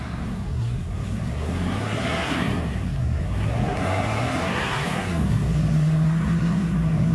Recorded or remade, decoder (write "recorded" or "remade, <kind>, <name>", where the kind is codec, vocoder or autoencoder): remade, codec, SNAC